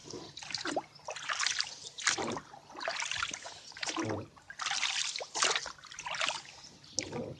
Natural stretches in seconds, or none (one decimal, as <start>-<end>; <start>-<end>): 0.0-7.4